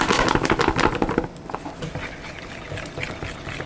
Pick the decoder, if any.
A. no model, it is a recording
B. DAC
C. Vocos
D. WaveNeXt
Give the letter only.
A